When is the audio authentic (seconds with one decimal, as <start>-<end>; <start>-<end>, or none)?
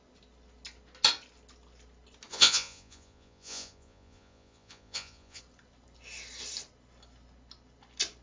0.0-2.3; 5.4-8.2